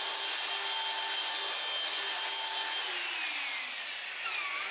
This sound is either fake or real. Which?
real